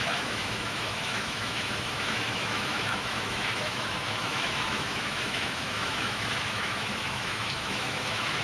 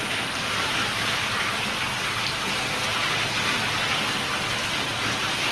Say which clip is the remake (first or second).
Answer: first